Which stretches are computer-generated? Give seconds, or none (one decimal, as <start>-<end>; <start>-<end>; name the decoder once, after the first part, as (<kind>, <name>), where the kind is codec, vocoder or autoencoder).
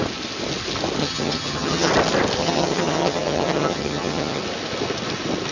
1.0-1.9 (vocoder, HiFi-GAN); 2.4-4.4